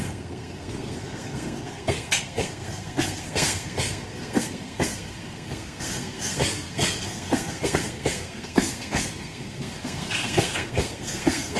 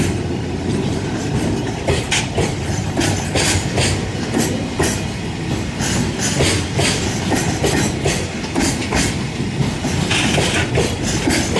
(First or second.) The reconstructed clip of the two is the first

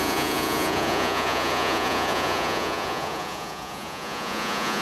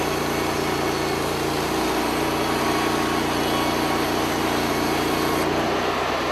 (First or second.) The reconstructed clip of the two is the first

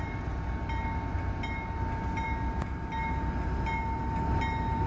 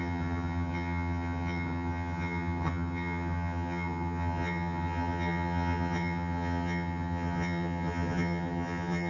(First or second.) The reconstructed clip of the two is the second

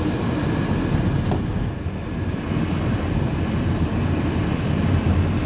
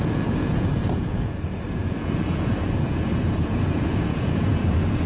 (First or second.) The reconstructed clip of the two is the second